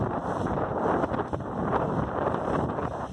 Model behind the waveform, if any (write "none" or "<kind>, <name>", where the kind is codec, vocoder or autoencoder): vocoder, BigVGAN v2